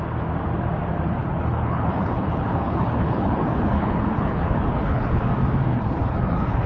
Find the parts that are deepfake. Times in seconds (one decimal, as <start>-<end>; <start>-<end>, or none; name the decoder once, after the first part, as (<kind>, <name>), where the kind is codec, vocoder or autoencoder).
1.2-5.2 (codec, HILCodec); 5.7-6.7